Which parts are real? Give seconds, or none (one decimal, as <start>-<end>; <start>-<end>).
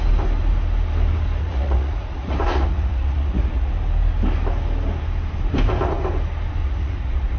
0.0-1.4; 3.7-6.6